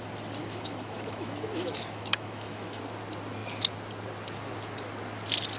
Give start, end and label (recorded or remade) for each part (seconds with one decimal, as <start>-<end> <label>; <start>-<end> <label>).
0.0-0.4 recorded; 0.4-2.8 remade; 2.8-5.6 recorded